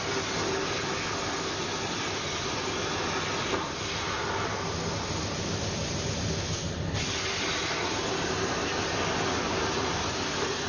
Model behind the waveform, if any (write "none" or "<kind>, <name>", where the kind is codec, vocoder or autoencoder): none